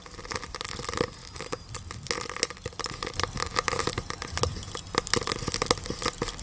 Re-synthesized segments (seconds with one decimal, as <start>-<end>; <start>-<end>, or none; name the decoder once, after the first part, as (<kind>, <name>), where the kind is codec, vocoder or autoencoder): none

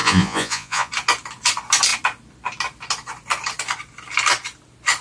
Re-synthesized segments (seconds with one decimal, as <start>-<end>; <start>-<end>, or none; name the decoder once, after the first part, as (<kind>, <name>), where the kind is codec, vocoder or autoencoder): 0.0-0.9 (vocoder, Vocos)

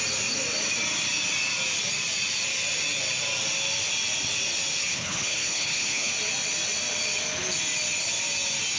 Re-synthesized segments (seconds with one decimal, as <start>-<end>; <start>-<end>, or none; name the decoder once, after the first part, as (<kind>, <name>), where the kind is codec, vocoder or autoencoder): 4.9-6.1 (codec, HILCodec)

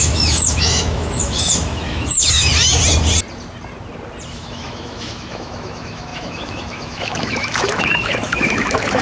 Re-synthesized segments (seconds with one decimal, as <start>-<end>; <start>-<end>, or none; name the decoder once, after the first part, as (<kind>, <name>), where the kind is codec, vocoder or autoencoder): 0.0-2.5 (autoencoder, DAC-VAE); 4.3-9.0

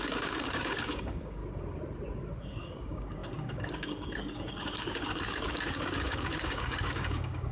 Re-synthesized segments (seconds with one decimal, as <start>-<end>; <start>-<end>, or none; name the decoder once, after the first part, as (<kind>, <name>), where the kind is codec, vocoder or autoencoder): 0.0-1.4 (codec, DAC); 2.4-7.5